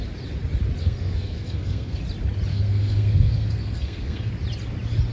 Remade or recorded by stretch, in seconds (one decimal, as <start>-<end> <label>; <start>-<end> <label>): 0.0-0.8 recorded; 0.8-2.0 remade; 2.0-2.5 recorded; 2.5-4.3 remade; 4.3-5.1 recorded